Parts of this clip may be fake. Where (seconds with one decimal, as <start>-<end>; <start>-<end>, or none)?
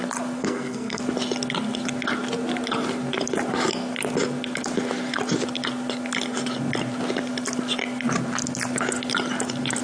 0.4-1.0